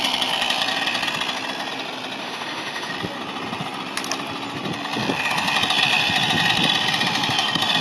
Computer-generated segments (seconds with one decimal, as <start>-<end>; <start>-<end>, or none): 2.2-2.9